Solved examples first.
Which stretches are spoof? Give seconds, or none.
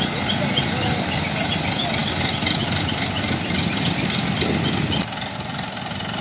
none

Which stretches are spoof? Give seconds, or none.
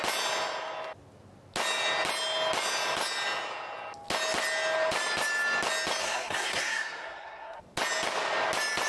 6.0-7.6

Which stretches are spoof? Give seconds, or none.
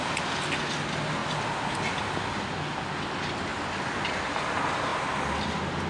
none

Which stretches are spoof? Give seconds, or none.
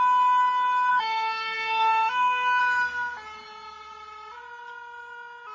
0.9-2.6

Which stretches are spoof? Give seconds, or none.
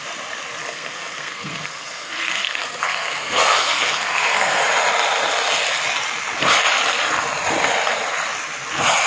0.6-4.6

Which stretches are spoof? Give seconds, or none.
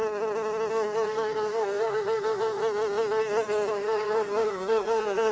0.7-2.6; 3.7-5.3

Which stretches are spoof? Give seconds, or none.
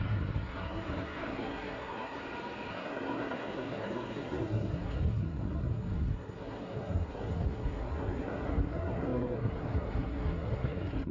0.0-2.2; 2.7-11.1